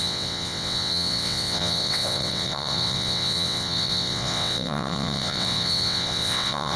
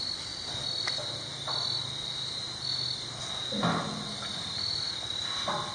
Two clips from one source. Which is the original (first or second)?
second